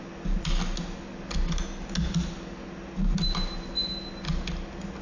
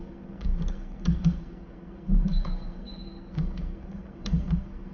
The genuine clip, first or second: first